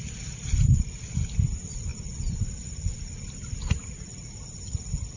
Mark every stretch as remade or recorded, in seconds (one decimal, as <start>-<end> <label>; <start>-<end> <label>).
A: 0.0-5.2 recorded